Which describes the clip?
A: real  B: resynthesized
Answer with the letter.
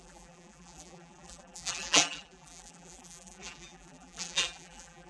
B